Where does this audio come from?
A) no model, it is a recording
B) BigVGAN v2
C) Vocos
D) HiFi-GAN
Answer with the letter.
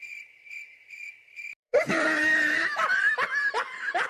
B